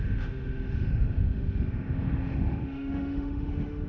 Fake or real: fake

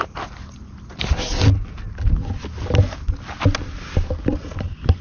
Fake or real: real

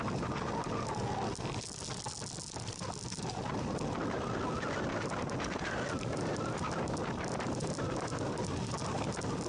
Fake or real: real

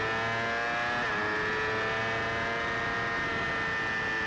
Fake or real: real